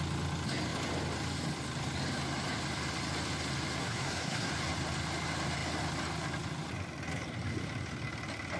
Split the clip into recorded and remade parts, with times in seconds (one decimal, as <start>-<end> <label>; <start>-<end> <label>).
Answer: 0.0-3.8 recorded; 3.8-4.5 remade; 4.5-8.6 recorded